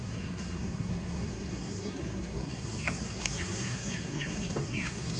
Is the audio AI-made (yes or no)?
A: yes